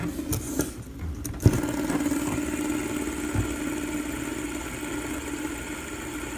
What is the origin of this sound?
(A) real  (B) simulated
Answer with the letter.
A